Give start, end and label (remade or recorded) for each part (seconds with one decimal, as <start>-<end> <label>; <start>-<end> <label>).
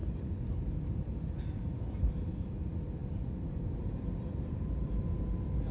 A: 0.0-5.7 recorded